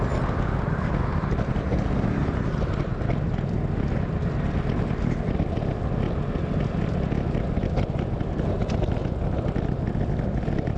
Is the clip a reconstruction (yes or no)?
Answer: no